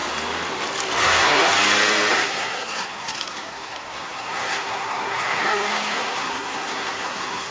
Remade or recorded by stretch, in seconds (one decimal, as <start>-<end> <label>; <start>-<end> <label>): 0.0-1.0 recorded; 1.0-1.5 remade; 1.5-2.1 recorded; 2.1-7.5 remade